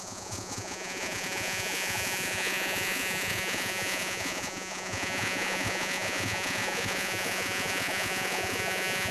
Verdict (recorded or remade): remade